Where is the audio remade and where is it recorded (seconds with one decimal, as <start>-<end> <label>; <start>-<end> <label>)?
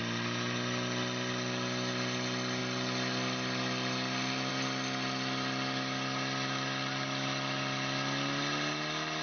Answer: 0.0-9.2 recorded